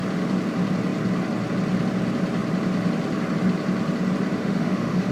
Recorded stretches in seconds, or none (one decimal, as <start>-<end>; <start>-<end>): 0.0-4.4